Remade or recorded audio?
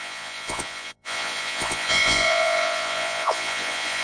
remade